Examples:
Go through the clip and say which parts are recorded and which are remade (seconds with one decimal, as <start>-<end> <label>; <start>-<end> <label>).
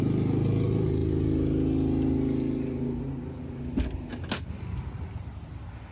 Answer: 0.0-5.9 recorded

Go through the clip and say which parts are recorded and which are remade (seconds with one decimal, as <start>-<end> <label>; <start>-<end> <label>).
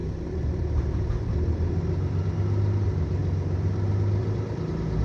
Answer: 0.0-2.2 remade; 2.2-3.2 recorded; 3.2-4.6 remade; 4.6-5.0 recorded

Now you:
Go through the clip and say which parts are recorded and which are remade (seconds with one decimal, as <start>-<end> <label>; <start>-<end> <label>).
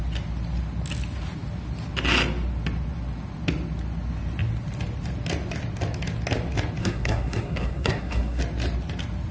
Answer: 0.0-6.8 recorded; 6.8-8.4 remade; 8.4-9.3 recorded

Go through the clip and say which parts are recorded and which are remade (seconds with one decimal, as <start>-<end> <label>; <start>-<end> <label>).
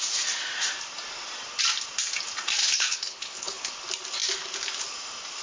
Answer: 0.0-2.6 recorded; 2.6-3.7 remade; 3.7-5.4 recorded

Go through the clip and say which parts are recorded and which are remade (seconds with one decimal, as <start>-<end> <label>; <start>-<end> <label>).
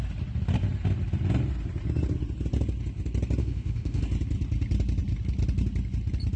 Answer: 0.0-3.4 recorded; 3.4-4.0 remade; 4.0-6.4 recorded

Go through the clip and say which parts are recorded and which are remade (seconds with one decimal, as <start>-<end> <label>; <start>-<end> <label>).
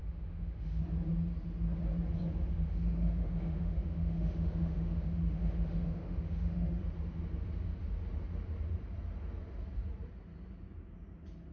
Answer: 0.0-0.8 remade; 0.8-2.5 recorded; 2.5-6.8 remade; 6.8-11.5 recorded